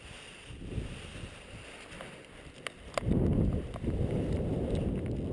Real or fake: real